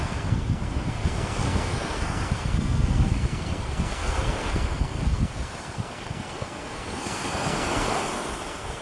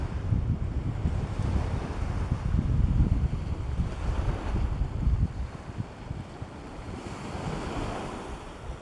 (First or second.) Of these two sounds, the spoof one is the first